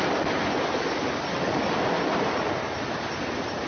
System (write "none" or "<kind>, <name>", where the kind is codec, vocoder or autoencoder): none